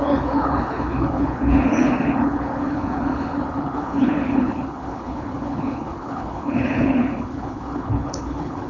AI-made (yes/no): yes